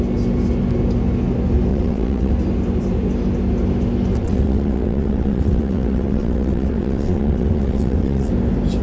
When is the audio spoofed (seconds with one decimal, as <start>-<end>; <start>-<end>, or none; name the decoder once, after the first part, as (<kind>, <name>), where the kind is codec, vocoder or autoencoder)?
1.7-2.3 (vocoder, WaveNeXt); 4.2-8.3